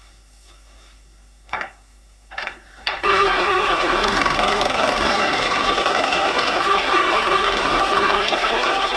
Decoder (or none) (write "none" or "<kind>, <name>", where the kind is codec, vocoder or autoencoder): codec, SNAC